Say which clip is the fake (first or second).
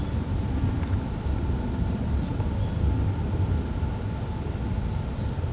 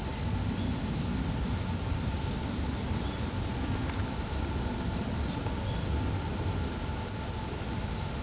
first